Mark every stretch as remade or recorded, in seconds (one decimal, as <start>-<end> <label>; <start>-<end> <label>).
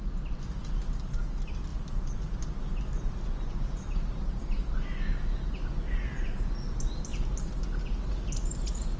0.0-9.0 recorded